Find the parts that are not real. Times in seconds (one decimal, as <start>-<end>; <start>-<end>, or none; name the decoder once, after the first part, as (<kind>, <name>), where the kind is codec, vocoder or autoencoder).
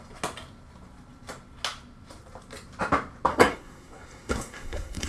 3.3-5.1 (codec, SNAC)